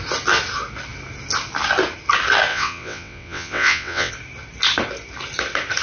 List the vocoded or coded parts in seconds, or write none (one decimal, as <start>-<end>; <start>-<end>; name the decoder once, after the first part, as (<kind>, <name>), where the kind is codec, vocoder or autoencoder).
2.5-4.1 (vocoder, WaveNeXt)